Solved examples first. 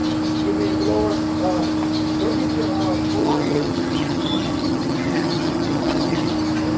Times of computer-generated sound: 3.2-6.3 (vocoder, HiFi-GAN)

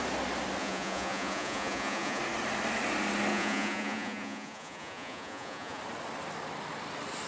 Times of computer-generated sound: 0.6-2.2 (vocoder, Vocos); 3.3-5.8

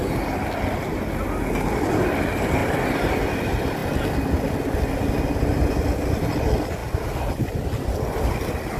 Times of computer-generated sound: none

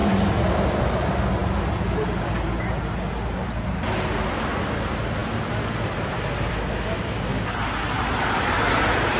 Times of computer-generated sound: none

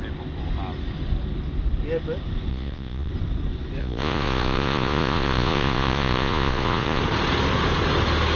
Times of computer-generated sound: 2.5-3.1 (vocoder, Vocos); 3.8-7.0

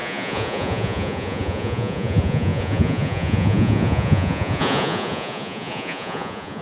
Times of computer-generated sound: 0.0-6.6 (vocoder, Vocos)

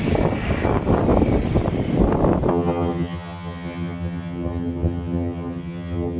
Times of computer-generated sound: 2.5-6.2 (vocoder, HiFi-GAN)